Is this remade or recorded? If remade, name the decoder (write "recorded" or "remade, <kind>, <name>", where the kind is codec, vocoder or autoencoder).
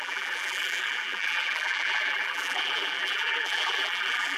remade, vocoder, BigVGAN v2